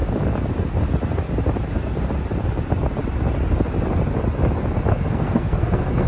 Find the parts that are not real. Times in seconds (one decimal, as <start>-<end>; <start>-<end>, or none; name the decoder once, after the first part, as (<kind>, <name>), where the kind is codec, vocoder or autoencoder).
4.9-6.1 (codec, SNAC)